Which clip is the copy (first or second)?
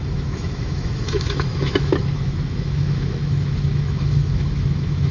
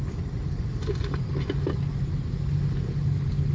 first